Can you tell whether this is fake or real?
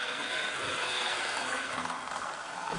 fake